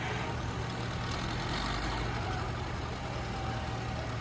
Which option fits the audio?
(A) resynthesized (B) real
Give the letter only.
B